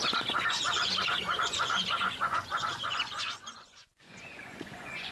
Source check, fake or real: fake